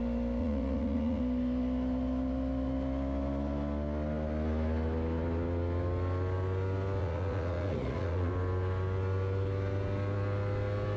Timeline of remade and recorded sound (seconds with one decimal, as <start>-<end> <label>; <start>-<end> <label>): 0.0-0.4 recorded; 0.4-1.2 remade; 1.2-7.0 recorded; 7.0-8.3 remade; 8.3-11.0 recorded